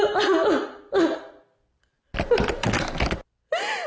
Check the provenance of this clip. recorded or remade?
recorded